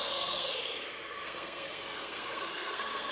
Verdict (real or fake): fake